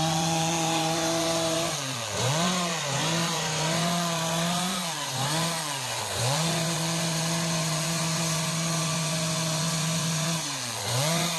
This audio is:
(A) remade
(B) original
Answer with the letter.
A